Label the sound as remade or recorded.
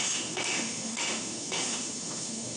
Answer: remade